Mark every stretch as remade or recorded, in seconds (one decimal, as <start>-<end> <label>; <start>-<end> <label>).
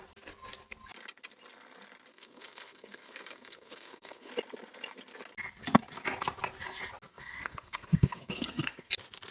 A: 0.0-2.1 recorded; 2.1-4.3 remade; 4.3-7.1 recorded; 7.1-8.9 remade; 8.9-9.3 recorded